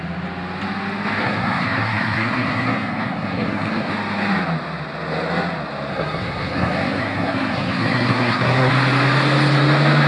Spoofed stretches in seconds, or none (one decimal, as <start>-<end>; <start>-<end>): 1.2-3.9; 5.9-8.7